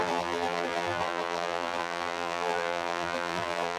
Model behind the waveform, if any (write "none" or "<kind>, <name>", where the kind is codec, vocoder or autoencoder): vocoder, BigVGAN v2